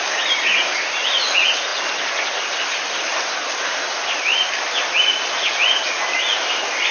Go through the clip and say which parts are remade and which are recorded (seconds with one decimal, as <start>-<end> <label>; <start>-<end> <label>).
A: 0.0-6.9 recorded